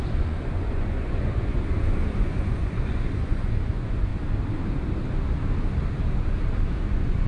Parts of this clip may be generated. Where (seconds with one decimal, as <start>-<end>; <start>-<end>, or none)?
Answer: 0.0-4.1; 6.8-7.3